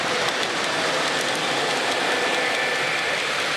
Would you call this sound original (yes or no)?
yes